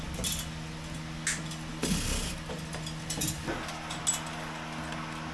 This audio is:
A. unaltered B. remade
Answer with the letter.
A